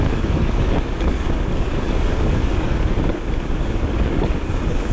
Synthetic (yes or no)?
yes